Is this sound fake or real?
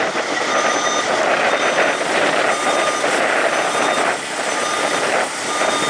real